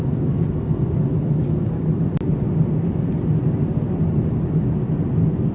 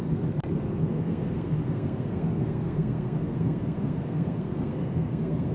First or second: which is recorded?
first